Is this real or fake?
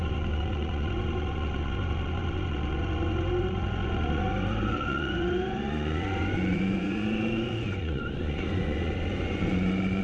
fake